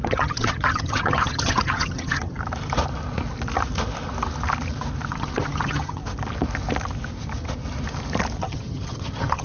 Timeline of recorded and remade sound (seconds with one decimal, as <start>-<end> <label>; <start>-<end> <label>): 0.0-2.4 remade; 2.4-5.1 recorded; 5.1-6.0 remade; 6.0-8.4 recorded; 8.4-9.4 remade